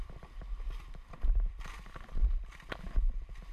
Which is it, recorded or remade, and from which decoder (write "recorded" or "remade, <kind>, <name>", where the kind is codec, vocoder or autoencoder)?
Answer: remade, vocoder, BigVGAN v2